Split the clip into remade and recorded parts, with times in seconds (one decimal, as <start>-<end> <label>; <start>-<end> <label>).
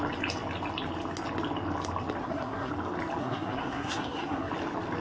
0.0-2.2 recorded; 2.2-2.7 remade; 2.7-3.2 recorded; 3.2-4.5 remade; 4.5-5.0 recorded